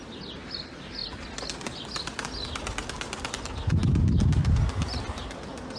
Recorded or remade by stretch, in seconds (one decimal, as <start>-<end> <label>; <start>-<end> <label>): 0.0-5.8 recorded